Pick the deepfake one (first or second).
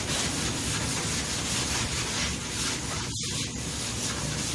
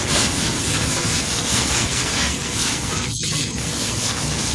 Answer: second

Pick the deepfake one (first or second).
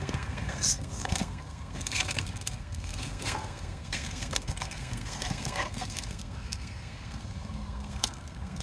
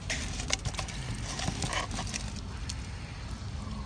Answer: first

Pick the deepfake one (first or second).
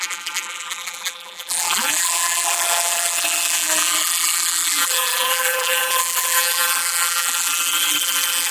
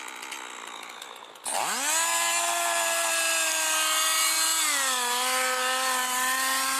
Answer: first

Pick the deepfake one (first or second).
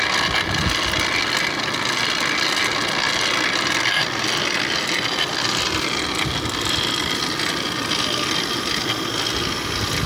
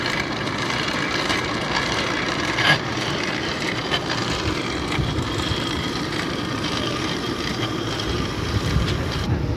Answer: second